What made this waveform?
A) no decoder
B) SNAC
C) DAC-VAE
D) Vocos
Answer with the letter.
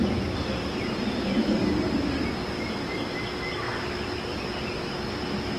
A